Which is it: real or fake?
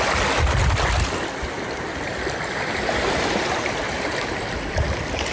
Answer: real